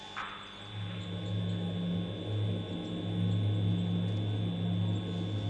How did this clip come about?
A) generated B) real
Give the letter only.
B